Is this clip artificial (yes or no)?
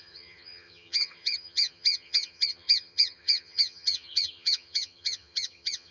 yes